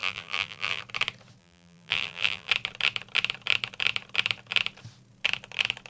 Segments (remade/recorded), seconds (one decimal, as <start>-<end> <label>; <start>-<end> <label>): 0.0-0.8 remade; 0.8-1.4 recorded; 1.4-2.5 remade; 2.5-5.9 recorded